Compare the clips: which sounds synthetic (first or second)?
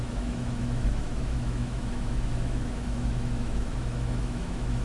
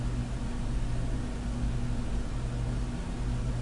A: first